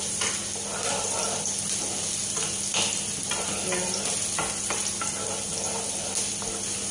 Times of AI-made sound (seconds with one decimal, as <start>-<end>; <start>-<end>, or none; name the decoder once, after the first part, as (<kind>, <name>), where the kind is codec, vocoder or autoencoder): none